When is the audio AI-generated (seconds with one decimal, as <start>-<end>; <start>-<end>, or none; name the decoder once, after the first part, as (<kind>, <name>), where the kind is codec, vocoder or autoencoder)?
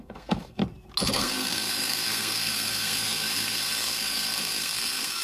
0.0-0.6 (codec, SNAC); 1.1-5.2